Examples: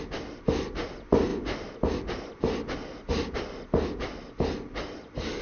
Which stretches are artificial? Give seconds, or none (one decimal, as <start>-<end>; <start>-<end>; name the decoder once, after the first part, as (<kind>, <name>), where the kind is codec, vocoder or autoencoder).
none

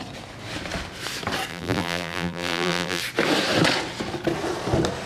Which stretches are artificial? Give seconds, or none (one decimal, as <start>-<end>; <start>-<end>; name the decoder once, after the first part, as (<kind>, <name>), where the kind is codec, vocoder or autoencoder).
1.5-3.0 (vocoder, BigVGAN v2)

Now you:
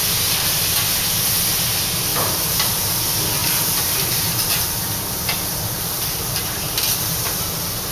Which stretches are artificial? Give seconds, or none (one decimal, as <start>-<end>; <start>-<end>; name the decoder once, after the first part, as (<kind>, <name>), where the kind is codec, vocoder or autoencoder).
2.1-2.7 (vocoder, BigVGAN v2); 3.4-7.5

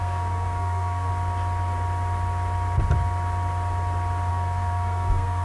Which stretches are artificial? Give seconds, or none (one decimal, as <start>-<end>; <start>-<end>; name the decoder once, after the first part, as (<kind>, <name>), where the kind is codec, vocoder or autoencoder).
0.0-1.1 (codec, SNAC); 4.3-5.4

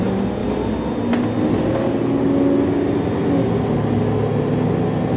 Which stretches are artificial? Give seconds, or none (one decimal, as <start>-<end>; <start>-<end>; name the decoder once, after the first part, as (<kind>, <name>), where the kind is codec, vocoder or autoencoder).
none

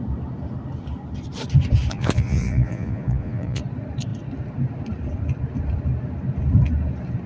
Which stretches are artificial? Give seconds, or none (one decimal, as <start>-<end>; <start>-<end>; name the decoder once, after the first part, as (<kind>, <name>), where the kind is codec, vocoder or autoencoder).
1.9-3.6 (vocoder, Vocos)